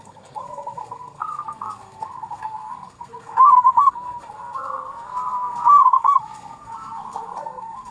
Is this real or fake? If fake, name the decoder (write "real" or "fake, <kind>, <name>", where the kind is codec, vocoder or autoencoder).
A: fake, codec, SNAC